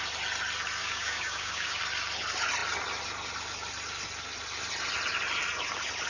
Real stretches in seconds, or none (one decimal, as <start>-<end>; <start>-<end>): 0.0-0.8; 1.8-6.1